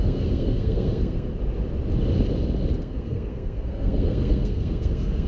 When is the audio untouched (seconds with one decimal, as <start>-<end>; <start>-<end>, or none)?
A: 1.3-2.8